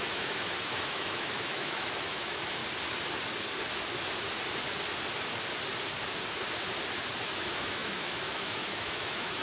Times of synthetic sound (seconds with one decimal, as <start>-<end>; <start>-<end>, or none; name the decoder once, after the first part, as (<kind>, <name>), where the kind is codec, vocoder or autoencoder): 0.0-2.6 (autoencoder, DAC-VAE); 7.2-9.4